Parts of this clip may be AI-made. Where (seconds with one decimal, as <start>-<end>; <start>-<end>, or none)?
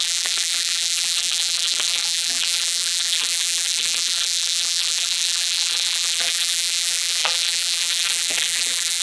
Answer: 0.0-9.0